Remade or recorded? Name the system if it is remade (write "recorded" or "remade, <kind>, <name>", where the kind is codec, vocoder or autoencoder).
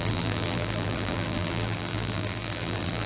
remade, vocoder, BigVGAN v2